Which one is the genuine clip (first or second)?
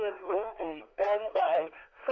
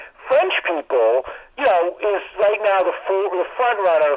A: second